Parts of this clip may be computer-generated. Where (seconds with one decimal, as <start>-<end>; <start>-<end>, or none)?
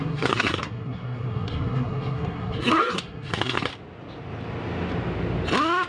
0.0-3.7